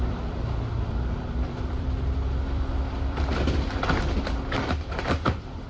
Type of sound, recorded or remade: remade